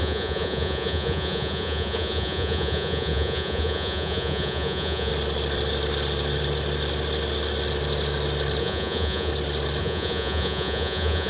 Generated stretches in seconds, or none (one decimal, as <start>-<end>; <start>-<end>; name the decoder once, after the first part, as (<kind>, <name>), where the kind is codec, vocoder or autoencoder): 0.0-5.1 (vocoder, Vocos); 8.6-9.3; 9.8-11.3

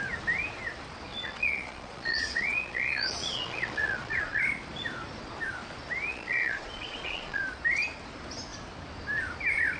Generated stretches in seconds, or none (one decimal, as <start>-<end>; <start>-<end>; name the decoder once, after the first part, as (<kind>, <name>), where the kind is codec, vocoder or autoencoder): 1.1-4.4 (vocoder, Vocos); 6.1-7.4

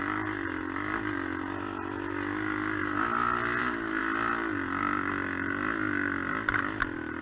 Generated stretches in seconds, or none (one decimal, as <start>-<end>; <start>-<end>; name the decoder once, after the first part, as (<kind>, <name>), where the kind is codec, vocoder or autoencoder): none

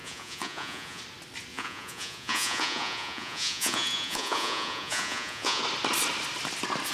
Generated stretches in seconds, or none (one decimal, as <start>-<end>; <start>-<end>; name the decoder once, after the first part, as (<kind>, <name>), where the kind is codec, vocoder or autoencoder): 0.0-1.0 (vocoder, Vocos); 1.5-5.6

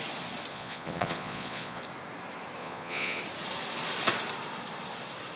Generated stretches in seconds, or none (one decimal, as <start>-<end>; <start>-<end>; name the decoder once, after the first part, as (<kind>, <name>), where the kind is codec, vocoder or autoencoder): 0.5-1.8 (vocoder, Vocos); 2.6-3.2